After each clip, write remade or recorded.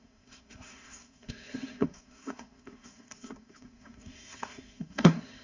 remade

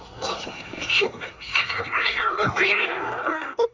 remade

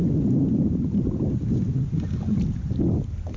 recorded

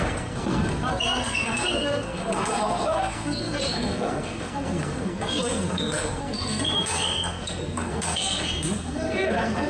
remade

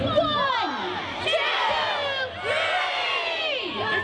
recorded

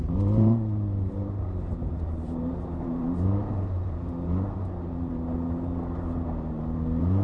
remade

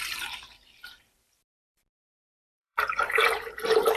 remade